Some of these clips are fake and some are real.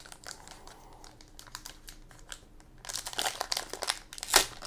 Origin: real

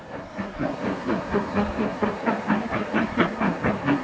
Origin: fake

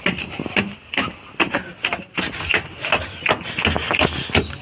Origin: real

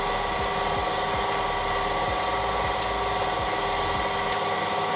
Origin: real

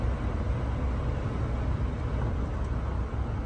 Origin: real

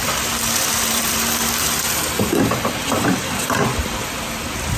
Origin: fake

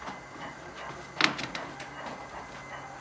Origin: real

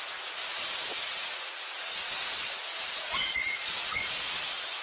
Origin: fake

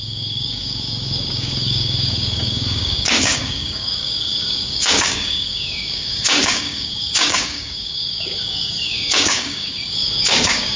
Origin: fake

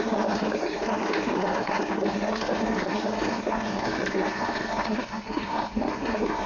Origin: fake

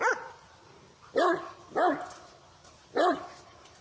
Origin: real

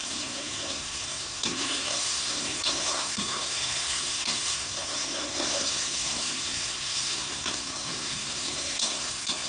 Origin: fake